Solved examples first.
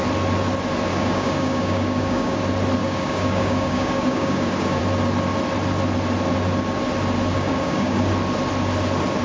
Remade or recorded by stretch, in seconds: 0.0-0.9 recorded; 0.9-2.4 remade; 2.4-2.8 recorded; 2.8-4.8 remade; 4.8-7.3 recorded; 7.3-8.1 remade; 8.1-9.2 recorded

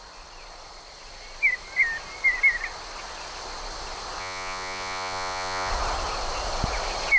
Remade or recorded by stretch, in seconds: 0.0-4.2 recorded; 4.2-5.7 remade; 5.7-7.2 recorded